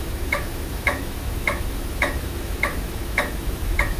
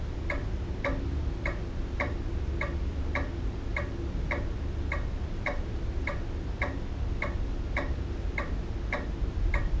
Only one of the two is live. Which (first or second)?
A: second